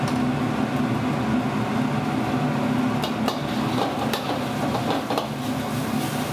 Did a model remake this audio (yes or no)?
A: no